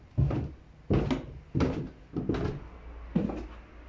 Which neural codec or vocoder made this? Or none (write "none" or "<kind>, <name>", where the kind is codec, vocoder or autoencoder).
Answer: none